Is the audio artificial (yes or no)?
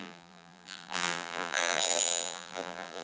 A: yes